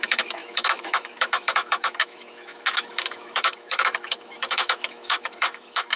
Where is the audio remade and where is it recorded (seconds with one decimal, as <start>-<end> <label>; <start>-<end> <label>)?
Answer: 0.0-6.0 remade